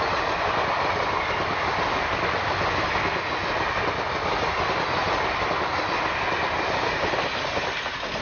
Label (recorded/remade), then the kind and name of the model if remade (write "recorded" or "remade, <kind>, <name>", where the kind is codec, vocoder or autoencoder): recorded